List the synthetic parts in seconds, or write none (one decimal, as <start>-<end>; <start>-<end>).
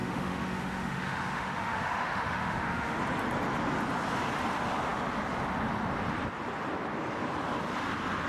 0.0-3.0